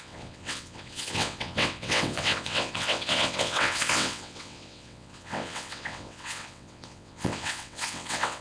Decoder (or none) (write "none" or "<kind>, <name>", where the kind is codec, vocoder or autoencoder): vocoder, WaveNeXt